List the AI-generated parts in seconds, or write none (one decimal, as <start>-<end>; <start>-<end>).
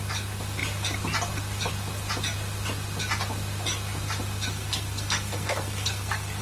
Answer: 4.5-6.4